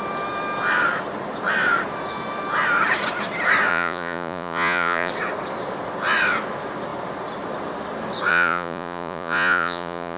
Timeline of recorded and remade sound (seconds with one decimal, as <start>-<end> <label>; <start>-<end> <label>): 0.0-3.7 recorded; 3.7-5.1 remade; 5.1-8.3 recorded; 8.3-10.2 remade